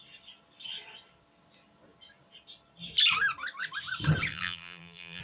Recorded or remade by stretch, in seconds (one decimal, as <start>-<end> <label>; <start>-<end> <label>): 0.0-4.3 recorded; 4.3-5.2 remade